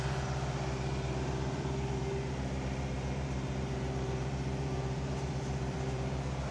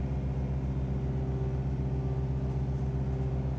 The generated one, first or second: first